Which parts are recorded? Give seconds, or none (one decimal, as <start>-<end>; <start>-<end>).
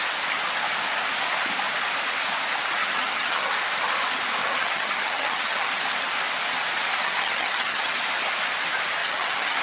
0.0-2.8; 3.5-4.4; 5.7-7.0; 8.0-9.0